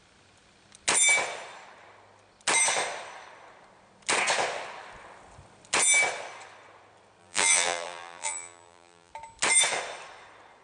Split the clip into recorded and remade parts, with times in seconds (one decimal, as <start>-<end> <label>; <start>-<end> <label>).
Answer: 0.0-7.2 recorded; 7.2-9.1 remade; 9.1-10.6 recorded